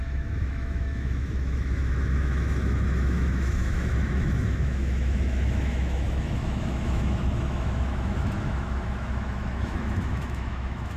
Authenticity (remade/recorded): remade